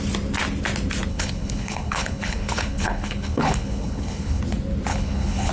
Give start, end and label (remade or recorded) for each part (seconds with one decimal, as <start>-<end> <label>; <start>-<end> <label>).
0.0-1.1 recorded; 1.1-4.4 remade; 4.4-4.9 recorded; 4.9-5.5 remade